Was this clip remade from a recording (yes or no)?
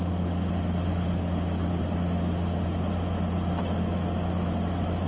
no